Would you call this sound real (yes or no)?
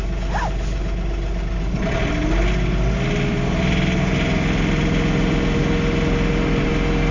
yes